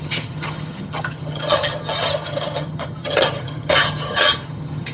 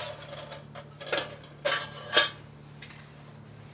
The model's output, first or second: first